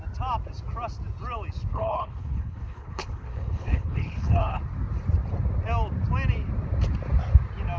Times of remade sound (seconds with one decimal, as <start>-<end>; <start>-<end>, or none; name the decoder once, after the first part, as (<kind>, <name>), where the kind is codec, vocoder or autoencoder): 1.7-4.6 (codec, HILCodec)